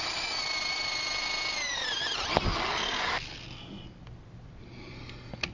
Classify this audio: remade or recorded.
recorded